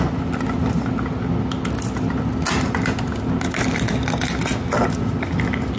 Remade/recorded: recorded